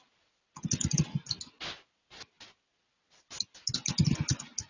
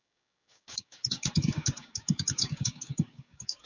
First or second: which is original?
first